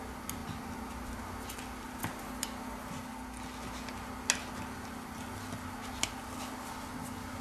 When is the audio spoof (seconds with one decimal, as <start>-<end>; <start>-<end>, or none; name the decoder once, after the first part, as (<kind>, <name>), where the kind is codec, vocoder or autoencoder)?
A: none